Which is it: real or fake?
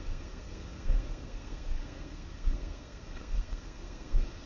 fake